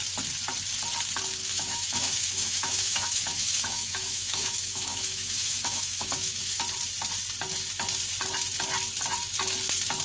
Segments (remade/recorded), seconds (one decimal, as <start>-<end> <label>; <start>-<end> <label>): 0.0-1.4 recorded; 1.4-6.6 remade; 6.6-10.0 recorded